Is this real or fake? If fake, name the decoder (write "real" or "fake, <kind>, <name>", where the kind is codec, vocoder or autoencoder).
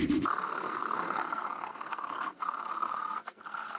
fake, codec, SNAC